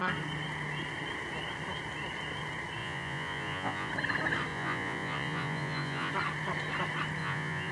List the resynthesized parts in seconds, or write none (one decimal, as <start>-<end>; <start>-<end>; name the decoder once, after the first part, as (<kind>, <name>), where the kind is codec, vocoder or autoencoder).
2.8-3.9 (vocoder, Vocos); 4.5-6.1; 7.2-7.7